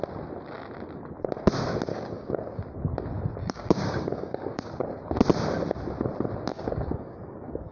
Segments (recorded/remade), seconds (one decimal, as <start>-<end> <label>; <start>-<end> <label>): 0.0-1.9 recorded; 1.9-2.6 remade; 2.6-3.4 recorded; 3.4-4.6 remade; 4.6-6.5 recorded; 6.5-7.7 remade